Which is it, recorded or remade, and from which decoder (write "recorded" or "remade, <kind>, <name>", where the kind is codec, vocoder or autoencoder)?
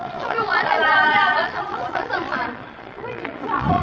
remade, vocoder, Vocos